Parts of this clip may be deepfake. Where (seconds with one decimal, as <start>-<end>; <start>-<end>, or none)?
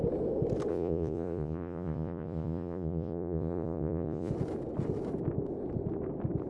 0.7-4.3